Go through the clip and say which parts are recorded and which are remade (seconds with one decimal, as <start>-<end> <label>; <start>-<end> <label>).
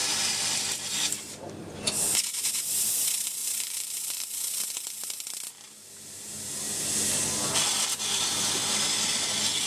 0.0-0.9 remade; 0.9-1.6 recorded; 1.6-2.2 remade; 2.2-9.7 recorded